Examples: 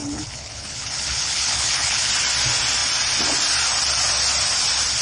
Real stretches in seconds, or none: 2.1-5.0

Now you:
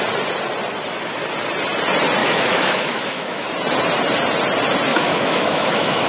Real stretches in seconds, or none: 0.0-2.2; 3.5-4.9